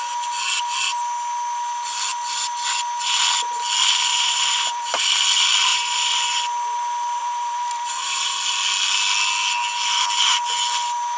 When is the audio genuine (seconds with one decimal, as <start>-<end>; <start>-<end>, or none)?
0.0-4.1; 5.0-5.7; 6.2-7.2; 8.3-11.2